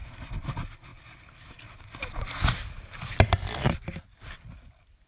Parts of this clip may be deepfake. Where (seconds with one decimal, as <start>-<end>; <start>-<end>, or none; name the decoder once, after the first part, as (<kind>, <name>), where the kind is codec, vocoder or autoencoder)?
none

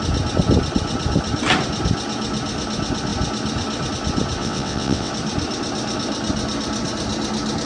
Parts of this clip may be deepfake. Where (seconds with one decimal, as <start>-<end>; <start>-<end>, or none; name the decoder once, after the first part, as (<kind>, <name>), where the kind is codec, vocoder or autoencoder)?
4.4-5.1 (vocoder, WaveNeXt)

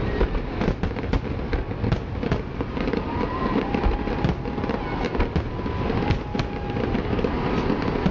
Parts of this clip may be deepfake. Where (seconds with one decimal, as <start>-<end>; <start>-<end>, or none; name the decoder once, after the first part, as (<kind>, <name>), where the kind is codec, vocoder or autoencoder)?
none

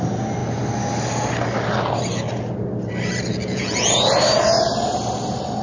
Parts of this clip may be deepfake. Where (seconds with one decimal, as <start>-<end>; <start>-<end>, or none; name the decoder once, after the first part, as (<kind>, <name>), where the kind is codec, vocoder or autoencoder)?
3.4-4.1 (vocoder, Vocos)

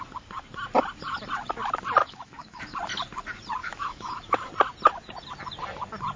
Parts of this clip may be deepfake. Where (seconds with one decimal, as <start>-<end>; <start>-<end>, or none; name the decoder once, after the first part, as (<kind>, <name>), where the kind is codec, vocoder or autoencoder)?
2.0-2.6 (autoencoder, DAC-VAE); 3.6-4.5

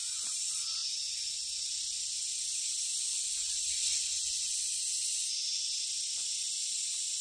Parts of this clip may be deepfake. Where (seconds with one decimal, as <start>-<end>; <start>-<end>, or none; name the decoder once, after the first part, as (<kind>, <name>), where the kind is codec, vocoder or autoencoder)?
3.4-4.5 (vocoder, Vocos)